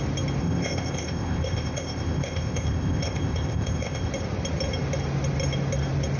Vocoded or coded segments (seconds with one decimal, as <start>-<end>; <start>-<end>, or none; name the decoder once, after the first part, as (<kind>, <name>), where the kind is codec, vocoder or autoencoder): 0.4-4.1 (codec, ZipCodec)